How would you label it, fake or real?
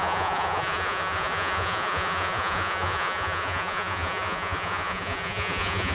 fake